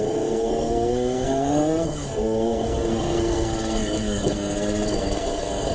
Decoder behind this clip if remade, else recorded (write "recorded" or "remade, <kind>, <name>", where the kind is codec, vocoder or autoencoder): remade, codec, SNAC